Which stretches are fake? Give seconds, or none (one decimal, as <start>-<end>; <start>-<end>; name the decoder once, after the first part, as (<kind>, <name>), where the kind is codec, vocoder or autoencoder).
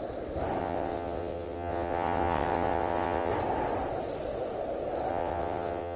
0.6-3.3 (vocoder, WaveNeXt); 5.1-6.0